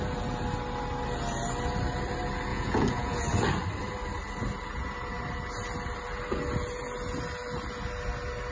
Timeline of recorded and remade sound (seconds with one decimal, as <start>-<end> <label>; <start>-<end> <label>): 0.0-2.5 recorded; 2.5-3.2 remade; 3.2-8.5 recorded